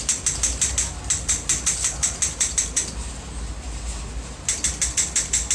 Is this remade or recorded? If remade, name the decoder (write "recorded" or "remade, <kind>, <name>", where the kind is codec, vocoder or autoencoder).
recorded